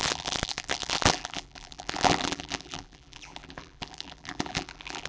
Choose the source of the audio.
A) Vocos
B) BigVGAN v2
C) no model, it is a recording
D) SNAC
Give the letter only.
B